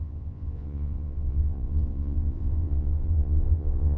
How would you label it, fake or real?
fake